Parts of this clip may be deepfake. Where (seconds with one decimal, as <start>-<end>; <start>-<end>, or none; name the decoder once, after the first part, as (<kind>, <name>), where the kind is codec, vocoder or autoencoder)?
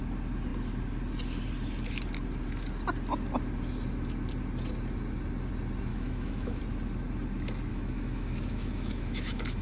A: 5.9-6.6 (autoencoder, DAC-VAE); 7.7-9.6